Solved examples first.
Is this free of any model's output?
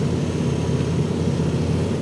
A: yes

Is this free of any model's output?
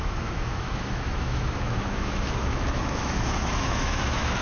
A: no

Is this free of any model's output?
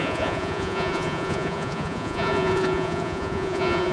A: no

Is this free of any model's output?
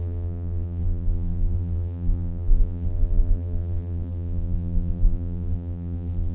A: no